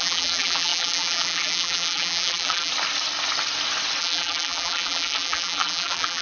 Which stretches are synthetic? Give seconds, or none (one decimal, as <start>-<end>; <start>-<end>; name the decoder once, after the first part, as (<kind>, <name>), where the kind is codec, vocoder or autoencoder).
0.0-2.7 (vocoder, BigVGAN v2); 4.0-6.2